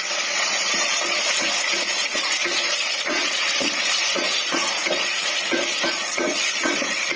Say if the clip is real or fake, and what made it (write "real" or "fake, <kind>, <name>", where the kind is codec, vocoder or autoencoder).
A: fake, vocoder, Vocos